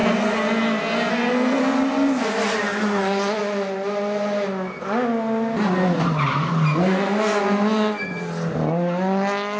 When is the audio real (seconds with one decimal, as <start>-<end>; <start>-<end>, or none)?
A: 0.0-1.1; 1.6-6.8; 7.4-9.6